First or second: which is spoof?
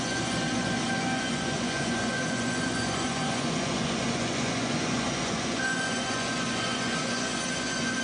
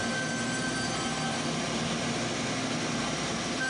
first